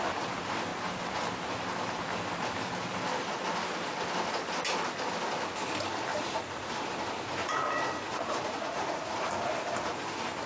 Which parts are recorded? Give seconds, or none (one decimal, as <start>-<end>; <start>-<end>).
0.0-6.1; 6.7-7.4; 9.4-10.5